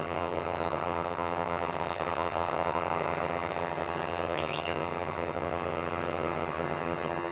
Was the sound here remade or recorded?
remade